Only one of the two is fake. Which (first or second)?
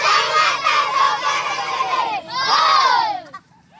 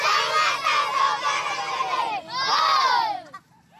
first